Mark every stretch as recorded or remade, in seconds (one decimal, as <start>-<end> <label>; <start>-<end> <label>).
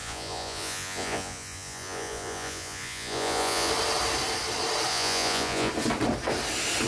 0.0-3.7 remade; 3.7-4.9 recorded; 4.9-5.7 remade; 5.7-6.9 recorded